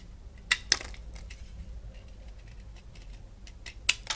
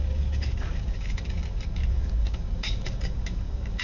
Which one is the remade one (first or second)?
second